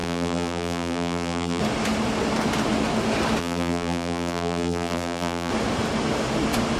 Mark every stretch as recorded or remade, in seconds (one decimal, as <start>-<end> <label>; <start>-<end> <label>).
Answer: 0.0-1.6 remade; 1.6-3.4 recorded; 3.4-5.5 remade; 5.5-6.8 recorded